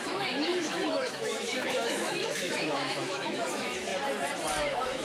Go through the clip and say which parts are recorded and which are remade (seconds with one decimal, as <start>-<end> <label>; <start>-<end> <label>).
0.0-3.9 remade; 3.9-4.6 recorded; 4.6-5.0 remade